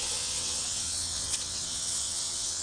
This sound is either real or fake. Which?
fake